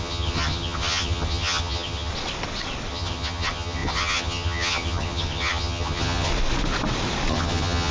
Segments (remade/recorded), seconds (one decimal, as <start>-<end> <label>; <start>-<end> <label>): 0.0-2.1 remade; 2.1-2.9 recorded; 2.9-6.3 remade; 6.3-7.3 recorded; 7.3-7.9 remade